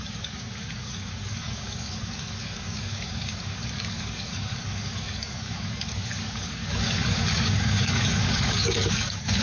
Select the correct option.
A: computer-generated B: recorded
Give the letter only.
A